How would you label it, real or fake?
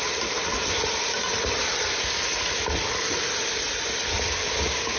real